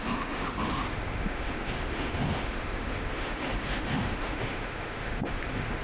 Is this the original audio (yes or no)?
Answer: no